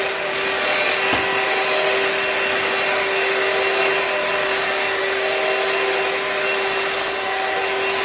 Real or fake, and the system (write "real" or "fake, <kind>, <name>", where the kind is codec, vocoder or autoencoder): real